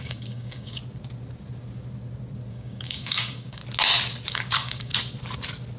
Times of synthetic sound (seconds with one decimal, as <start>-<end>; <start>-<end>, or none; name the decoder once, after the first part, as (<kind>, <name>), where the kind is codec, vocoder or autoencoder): 0.0-0.8 (codec, DAC); 2.5-3.6; 4.3-4.9